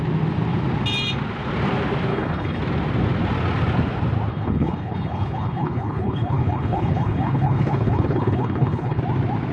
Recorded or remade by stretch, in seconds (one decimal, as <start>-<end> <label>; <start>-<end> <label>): 0.0-2.1 recorded; 2.1-2.6 remade; 2.6-4.3 recorded; 4.3-9.0 remade; 9.0-9.5 recorded